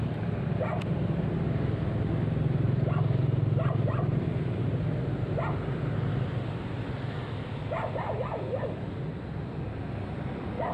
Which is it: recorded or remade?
recorded